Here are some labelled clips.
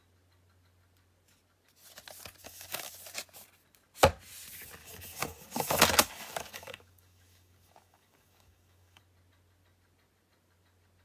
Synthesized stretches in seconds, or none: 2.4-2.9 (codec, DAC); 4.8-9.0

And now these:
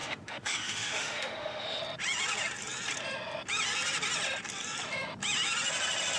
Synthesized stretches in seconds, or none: 0.0-1.8 (autoencoder, DAC-VAE)

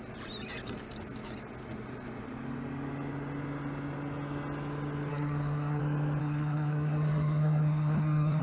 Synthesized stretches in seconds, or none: 5.1-5.8 (codec, SNAC); 6.2-8.4

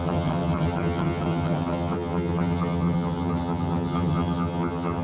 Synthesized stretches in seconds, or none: 0.0-5.0 (vocoder, HiFi-GAN)